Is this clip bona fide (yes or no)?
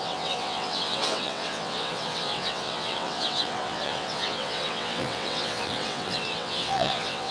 no